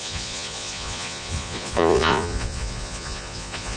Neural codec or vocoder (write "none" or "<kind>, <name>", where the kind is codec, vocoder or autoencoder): vocoder, Vocos